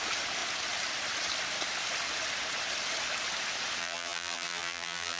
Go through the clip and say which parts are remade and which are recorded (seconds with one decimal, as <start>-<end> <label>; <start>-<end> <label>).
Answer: 0.0-3.8 recorded; 3.8-5.2 remade